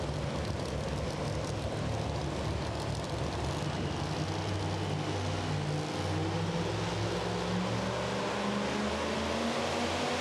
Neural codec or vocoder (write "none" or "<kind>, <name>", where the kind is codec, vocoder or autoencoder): none